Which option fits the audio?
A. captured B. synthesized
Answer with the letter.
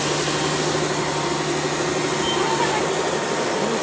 A